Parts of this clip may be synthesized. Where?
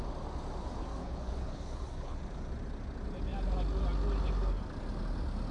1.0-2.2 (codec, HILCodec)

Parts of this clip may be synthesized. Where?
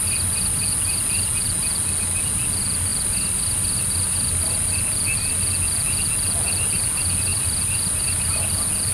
2.9-4.7 (vocoder, BigVGAN v2); 7.3-8.4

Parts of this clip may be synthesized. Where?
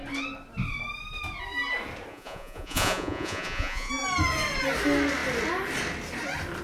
2.1-3.9 (vocoder, Vocos)